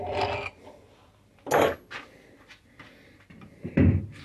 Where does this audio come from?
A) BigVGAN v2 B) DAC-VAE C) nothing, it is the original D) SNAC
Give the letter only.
C